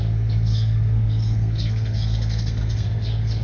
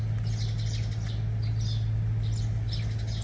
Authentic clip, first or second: second